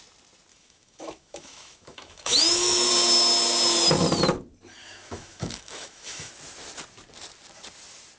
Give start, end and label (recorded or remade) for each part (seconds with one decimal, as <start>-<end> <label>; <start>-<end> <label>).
0.0-0.5 recorded; 0.5-2.9 remade; 2.9-4.8 recorded; 4.8-6.3 remade; 6.3-8.2 recorded